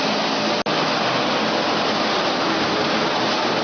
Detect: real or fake real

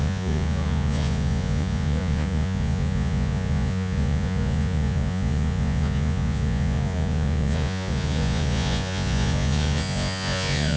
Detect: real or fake fake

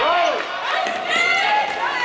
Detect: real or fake real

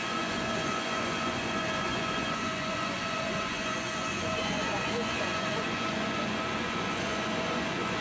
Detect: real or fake fake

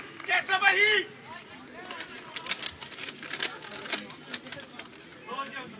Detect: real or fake real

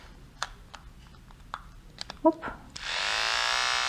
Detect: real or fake real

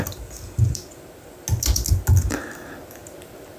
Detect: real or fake real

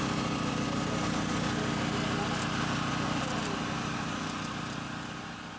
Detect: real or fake real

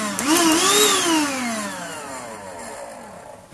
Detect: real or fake real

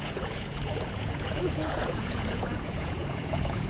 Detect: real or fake fake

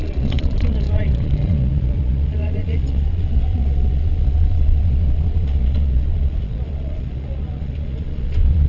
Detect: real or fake fake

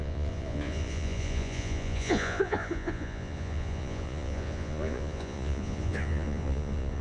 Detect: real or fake fake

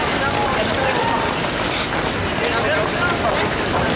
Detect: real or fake real